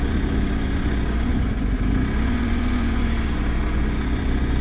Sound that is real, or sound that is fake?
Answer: fake